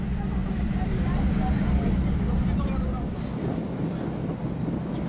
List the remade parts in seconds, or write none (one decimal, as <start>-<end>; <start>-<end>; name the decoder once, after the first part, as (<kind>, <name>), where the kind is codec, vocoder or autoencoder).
0.4-2.1 (vocoder, BigVGAN v2)